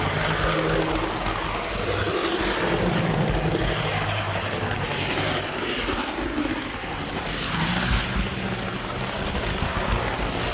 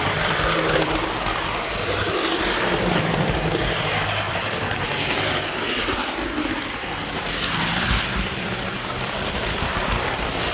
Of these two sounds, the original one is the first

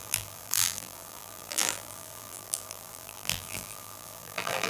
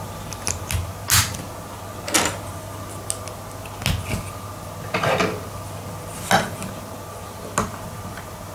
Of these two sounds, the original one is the second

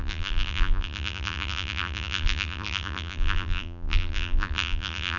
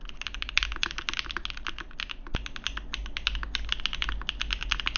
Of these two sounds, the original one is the second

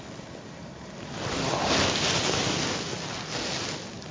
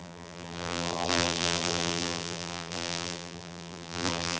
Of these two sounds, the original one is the first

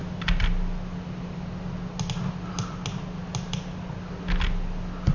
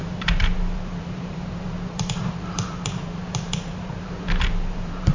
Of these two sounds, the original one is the first